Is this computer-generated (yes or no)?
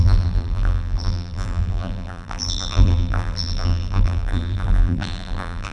yes